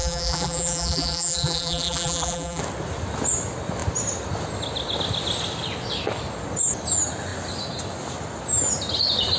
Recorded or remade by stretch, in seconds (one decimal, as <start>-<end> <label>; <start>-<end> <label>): 0.0-2.6 remade; 2.6-9.4 recorded